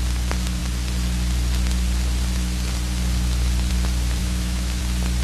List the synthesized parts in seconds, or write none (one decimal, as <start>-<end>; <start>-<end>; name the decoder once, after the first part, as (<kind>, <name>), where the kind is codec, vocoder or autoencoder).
4.2-4.8 (autoencoder, DAC-VAE)